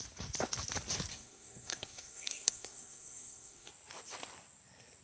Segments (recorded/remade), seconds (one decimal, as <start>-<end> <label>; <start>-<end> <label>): 0.0-1.1 recorded; 1.1-3.7 remade; 3.7-5.0 recorded